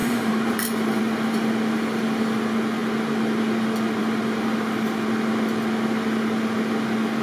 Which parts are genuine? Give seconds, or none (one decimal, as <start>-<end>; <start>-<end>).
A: 1.0-7.2